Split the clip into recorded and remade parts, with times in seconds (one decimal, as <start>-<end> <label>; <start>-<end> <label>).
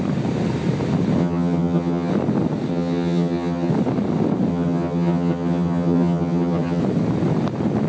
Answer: 0.0-1.2 recorded; 1.2-2.1 remade; 2.1-2.7 recorded; 2.7-3.7 remade; 3.7-4.5 recorded; 4.5-6.8 remade; 6.8-7.9 recorded